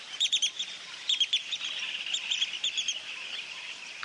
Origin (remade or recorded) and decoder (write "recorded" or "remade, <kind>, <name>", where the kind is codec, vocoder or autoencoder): remade, vocoder, BigVGAN v2